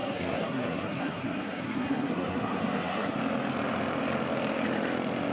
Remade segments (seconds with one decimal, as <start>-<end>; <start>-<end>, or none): 0.0-3.2